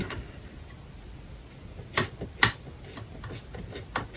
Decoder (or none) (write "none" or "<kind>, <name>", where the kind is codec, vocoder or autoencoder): none